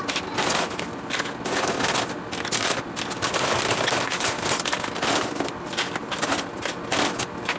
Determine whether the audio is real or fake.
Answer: real